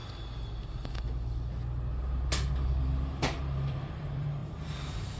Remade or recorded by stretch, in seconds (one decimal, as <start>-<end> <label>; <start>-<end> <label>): 0.0-3.1 recorded; 3.1-5.2 remade